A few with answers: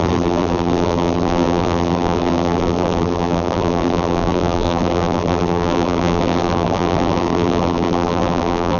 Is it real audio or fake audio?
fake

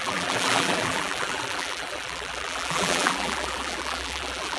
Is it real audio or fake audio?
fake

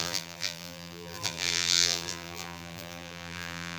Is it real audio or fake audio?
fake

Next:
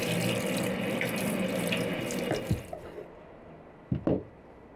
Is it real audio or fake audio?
real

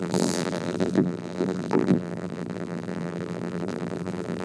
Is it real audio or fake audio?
fake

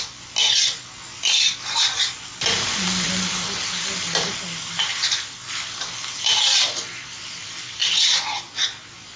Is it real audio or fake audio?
real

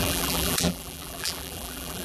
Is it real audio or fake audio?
fake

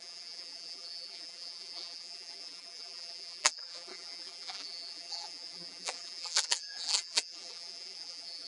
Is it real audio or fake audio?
fake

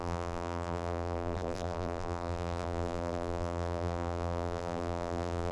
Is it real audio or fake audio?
fake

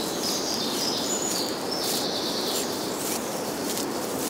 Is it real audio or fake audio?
fake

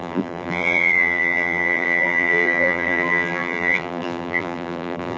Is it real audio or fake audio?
fake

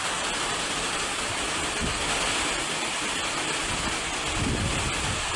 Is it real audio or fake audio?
real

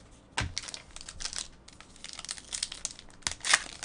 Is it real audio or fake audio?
real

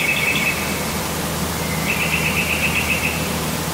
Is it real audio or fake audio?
real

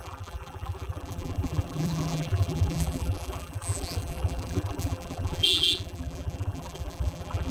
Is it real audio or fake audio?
fake